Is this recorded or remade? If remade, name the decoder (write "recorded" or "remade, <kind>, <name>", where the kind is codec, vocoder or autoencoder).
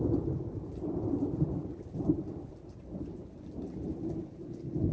recorded